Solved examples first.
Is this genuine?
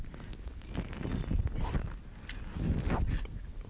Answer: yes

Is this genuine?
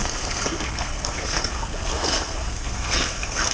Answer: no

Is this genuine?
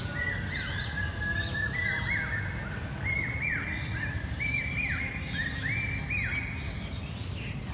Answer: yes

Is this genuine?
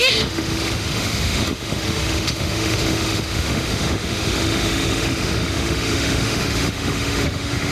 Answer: no